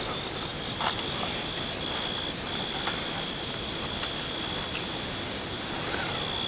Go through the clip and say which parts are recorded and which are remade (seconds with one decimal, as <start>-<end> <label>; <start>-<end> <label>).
0.0-6.5 recorded